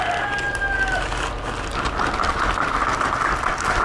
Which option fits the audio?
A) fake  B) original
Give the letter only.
B